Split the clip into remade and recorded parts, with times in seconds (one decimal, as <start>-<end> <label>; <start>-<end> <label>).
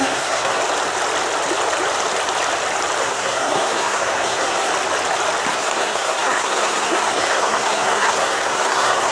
0.0-0.6 remade; 0.6-3.0 recorded; 3.0-4.7 remade; 4.7-5.5 recorded; 5.5-9.1 remade